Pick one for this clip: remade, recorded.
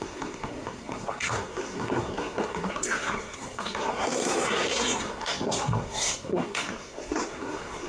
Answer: remade